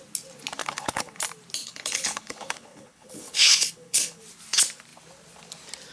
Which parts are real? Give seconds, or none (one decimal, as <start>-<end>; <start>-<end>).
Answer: 0.0-0.6; 1.2-1.6; 4.2-5.9